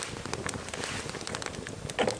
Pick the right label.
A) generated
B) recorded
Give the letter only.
B